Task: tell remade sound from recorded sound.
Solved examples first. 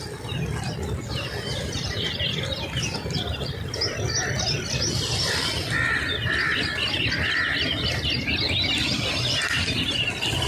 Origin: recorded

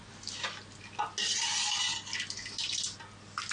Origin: recorded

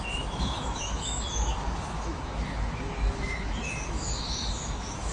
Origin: remade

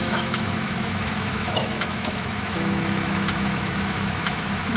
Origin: remade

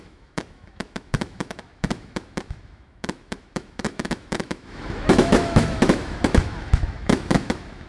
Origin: remade